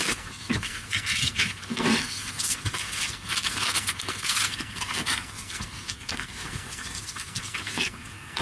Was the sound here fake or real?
fake